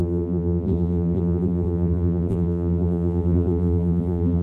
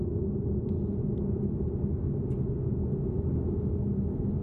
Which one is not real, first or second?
first